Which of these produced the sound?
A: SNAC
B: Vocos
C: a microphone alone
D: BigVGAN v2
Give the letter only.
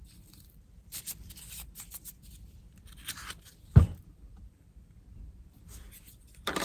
D